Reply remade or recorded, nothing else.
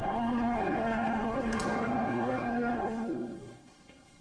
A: remade